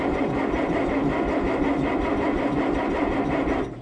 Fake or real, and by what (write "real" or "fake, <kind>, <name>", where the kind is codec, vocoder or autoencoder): real